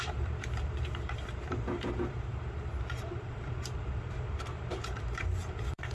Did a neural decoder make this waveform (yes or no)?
yes